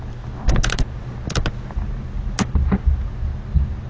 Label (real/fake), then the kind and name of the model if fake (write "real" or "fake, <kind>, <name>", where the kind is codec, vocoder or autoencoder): real